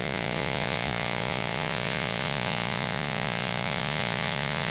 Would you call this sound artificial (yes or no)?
yes